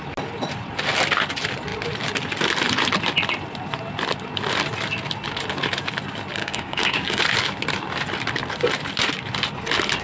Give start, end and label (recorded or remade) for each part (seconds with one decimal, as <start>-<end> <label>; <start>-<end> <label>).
0.0-6.4 recorded; 6.4-7.2 remade; 7.2-10.0 recorded